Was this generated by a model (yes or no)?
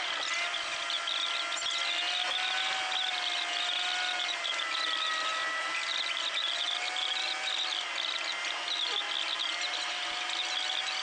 no